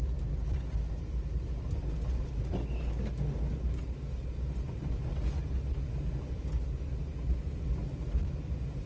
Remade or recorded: recorded